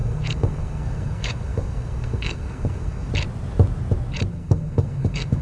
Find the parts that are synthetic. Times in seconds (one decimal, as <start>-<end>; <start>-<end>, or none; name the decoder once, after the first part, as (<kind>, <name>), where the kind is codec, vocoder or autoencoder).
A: 0.0-3.1 (codec, SNAC); 4.3-5.4